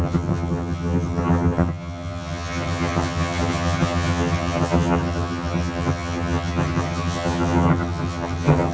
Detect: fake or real fake